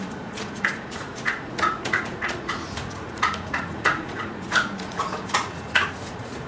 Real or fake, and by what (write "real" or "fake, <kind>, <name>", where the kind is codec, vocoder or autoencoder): fake, vocoder, Vocos